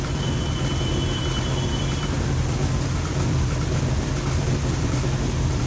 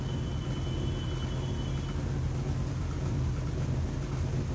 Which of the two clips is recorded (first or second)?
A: second